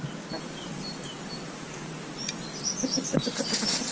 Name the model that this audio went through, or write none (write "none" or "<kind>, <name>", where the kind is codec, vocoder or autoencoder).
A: none